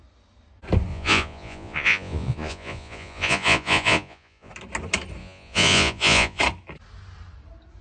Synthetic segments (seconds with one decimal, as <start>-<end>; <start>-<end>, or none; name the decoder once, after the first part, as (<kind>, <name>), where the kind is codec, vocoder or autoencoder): 0.9-4.5 (vocoder, Vocos); 5.2-6.4